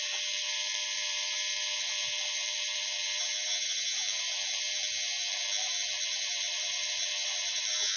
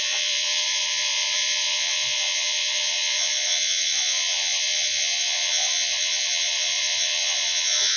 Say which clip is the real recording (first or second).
first